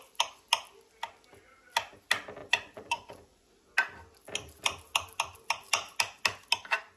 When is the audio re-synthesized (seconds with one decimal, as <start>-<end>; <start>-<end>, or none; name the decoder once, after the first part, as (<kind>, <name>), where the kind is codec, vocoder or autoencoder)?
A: 2.4-3.5 (vocoder, Vocos)